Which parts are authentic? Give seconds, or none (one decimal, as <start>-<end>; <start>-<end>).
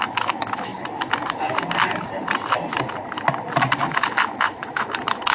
0.7-3.9